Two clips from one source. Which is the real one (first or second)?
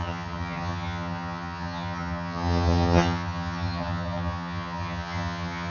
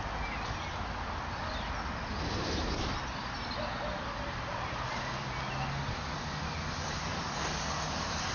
second